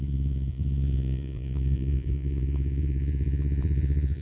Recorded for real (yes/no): no